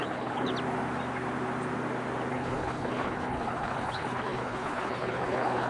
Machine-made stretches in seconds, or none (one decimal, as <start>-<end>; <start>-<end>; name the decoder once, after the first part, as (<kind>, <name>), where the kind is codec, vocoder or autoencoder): 0.0-0.5 (codec, HILCodec); 2.3-5.7